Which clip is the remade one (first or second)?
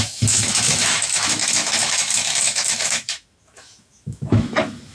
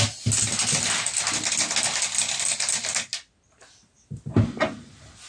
first